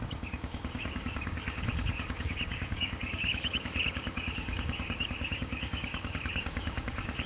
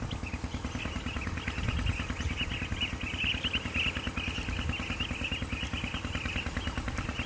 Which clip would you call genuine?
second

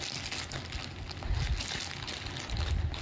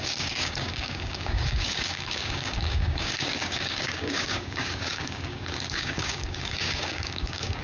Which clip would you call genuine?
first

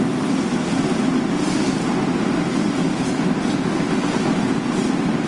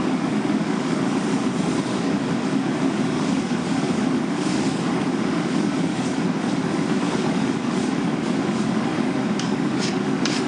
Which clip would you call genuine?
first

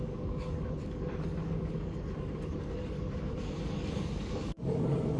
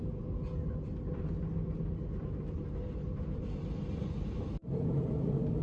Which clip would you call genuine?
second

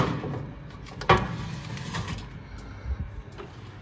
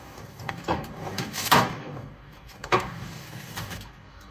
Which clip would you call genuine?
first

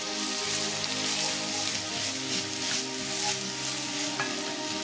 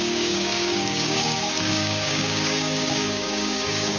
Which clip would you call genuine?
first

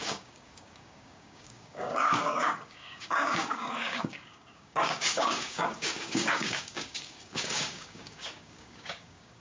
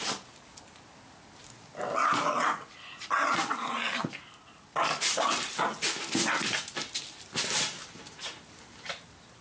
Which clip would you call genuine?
second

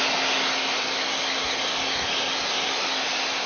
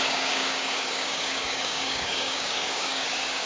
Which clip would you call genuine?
first